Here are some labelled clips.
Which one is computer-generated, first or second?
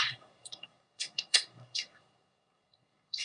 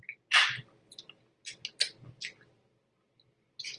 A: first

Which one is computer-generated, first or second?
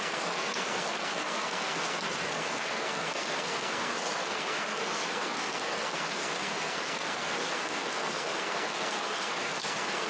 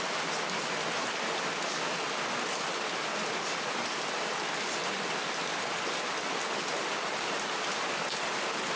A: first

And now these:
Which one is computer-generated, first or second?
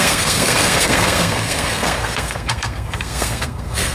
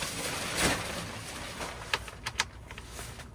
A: first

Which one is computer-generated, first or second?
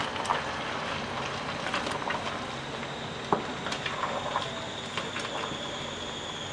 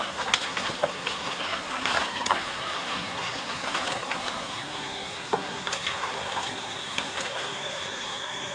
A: second